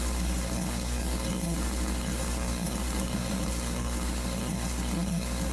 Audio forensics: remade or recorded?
remade